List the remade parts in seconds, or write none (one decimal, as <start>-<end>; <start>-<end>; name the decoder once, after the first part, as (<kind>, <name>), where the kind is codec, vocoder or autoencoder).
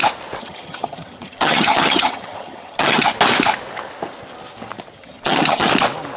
0.4-3.1 (vocoder, HiFi-GAN); 4.9-5.7